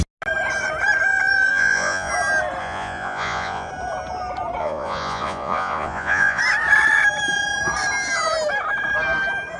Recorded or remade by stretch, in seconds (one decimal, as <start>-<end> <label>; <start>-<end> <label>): 0.0-1.5 recorded; 1.5-2.1 remade; 2.1-2.6 recorded; 2.6-3.7 remade; 3.7-4.6 recorded; 4.6-6.4 remade; 6.4-9.6 recorded